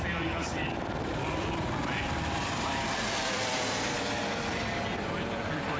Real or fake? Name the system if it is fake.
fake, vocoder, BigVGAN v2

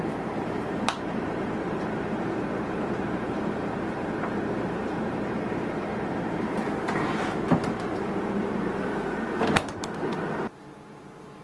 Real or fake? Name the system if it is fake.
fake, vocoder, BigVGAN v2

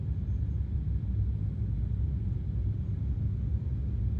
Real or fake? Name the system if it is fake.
real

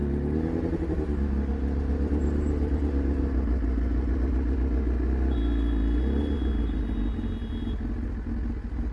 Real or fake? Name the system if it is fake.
real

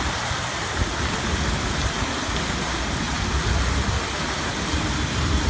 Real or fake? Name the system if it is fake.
fake, vocoder, BigVGAN v2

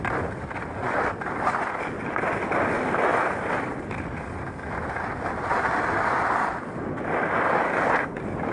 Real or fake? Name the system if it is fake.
real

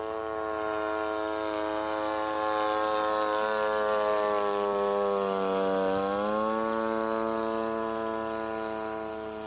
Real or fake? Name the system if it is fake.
real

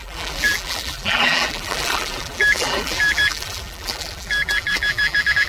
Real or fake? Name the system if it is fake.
fake, vocoder, BigVGAN v2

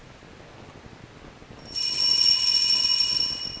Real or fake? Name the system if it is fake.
real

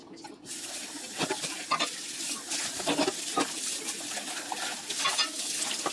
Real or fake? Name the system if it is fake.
real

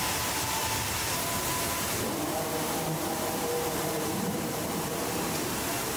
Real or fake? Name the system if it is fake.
fake, vocoder, BigVGAN v2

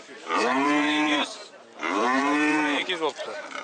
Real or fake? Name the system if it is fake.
fake, vocoder, BigVGAN v2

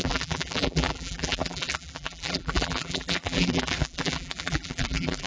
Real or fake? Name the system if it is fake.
fake, vocoder, BigVGAN v2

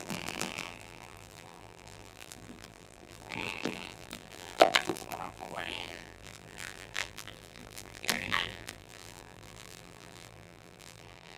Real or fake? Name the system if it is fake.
fake, vocoder, BigVGAN v2